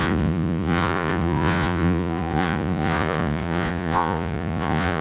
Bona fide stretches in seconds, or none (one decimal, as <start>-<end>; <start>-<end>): none